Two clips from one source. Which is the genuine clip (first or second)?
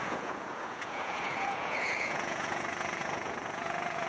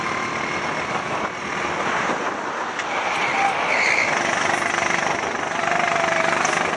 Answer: second